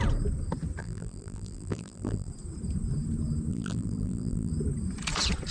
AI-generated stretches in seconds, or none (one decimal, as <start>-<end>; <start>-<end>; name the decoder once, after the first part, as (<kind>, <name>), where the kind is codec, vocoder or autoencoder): 0.8-2.3 (vocoder, BigVGAN v2); 3.5-4.5